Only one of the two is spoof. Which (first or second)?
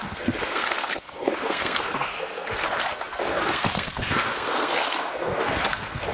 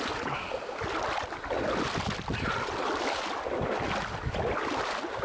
first